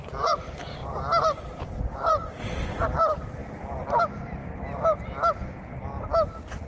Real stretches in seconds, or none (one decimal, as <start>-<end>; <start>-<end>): 0.0-6.7